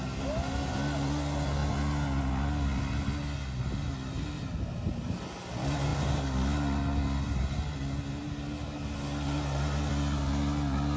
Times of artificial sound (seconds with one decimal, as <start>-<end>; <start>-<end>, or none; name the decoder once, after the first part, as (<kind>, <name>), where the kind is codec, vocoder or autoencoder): none